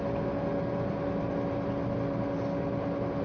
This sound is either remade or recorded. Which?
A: recorded